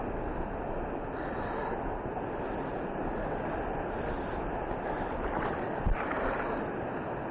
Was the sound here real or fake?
real